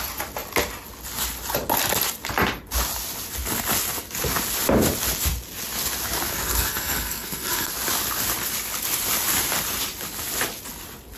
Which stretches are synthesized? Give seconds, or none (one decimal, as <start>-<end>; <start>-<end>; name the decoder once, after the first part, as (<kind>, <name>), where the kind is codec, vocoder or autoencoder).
6.3-7.7 (codec, SNAC)